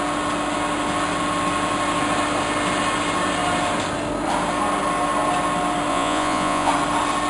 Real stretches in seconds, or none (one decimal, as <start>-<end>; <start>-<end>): 0.0-5.9; 6.7-7.3